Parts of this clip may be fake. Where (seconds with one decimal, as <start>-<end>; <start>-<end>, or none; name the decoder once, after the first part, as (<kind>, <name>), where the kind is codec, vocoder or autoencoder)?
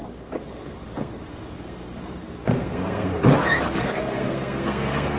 0.0-3.1 (codec, SNAC); 3.8-5.2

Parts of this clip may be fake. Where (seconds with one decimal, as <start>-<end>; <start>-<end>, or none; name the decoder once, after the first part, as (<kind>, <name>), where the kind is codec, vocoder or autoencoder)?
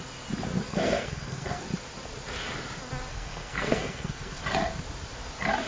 0.7-1.6 (codec, SNAC); 3.1-4.4